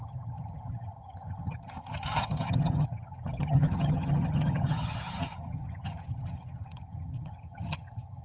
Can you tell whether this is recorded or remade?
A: remade